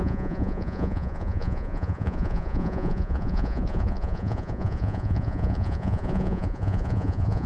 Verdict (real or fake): fake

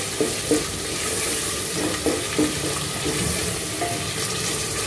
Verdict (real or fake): real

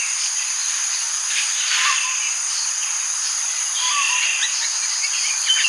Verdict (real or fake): real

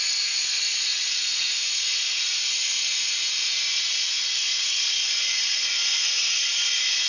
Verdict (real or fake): fake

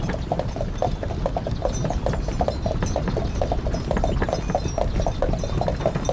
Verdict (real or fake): real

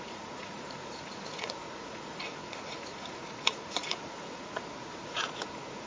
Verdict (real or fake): fake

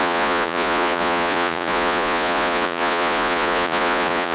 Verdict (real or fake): fake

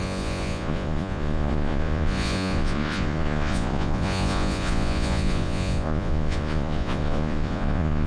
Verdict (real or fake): fake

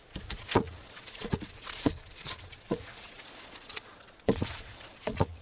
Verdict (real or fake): fake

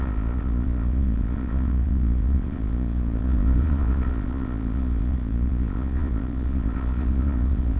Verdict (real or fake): fake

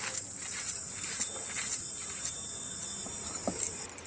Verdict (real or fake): real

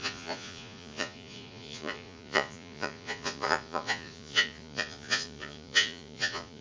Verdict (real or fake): fake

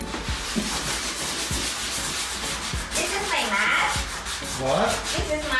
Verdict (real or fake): real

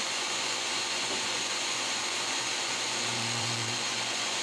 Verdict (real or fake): fake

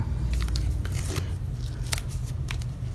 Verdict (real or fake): real